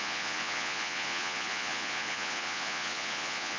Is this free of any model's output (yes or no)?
no